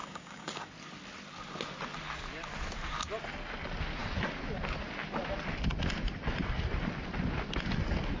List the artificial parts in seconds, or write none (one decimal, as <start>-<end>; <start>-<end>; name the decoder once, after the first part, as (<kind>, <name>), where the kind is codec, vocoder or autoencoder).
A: 0.0-0.7 (codec, DAC)